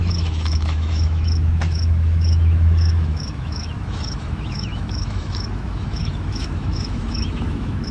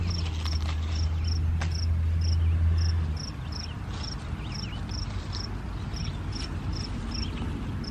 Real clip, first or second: second